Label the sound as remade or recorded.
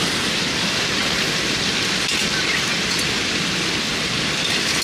recorded